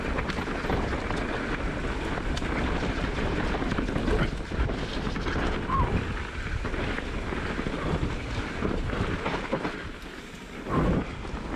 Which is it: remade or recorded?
recorded